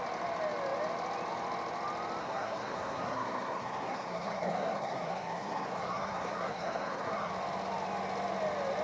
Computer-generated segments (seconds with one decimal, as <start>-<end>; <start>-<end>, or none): 2.2-7.3

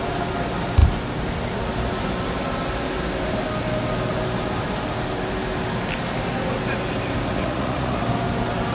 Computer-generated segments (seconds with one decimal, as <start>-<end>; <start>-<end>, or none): 7.3-8.0

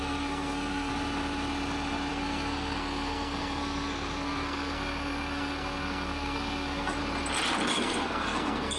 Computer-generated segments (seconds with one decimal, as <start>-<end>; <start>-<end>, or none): 0.0-0.9; 2.1-7.0; 7.7-8.8

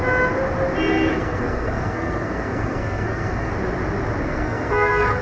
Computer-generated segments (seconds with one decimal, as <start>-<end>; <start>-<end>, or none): 1.1-3.5; 4.2-5.2

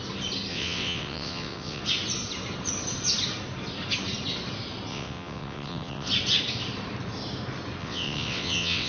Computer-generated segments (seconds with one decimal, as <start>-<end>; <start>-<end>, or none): 0.5-1.8; 4.9-6.1; 7.8-8.9

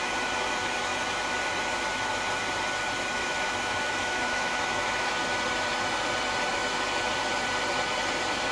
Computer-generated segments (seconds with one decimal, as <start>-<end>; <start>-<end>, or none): 3.2-5.1

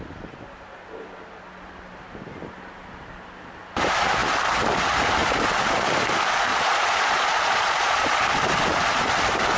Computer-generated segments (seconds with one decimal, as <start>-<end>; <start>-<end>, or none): 6.5-8.1

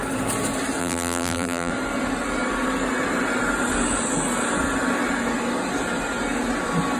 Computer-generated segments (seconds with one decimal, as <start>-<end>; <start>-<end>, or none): 0.8-1.7